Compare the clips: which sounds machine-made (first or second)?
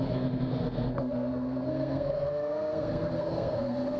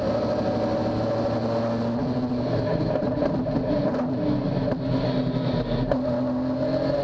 first